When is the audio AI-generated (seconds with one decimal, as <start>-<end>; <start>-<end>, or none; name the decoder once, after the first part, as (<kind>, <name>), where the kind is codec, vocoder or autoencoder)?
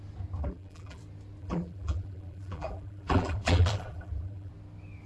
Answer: 0.4-1.0 (vocoder, BigVGAN v2); 1.4-4.5